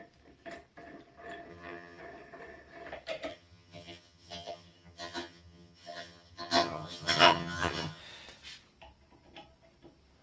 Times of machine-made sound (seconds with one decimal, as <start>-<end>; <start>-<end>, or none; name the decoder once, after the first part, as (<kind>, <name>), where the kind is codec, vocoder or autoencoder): 1.5-2.0 (vocoder, HiFi-GAN); 3.3-8.0